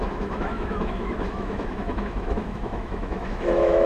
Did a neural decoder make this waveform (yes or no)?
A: yes